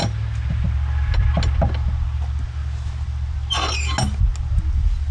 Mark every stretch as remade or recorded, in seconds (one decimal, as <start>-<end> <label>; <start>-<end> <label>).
0.0-5.1 recorded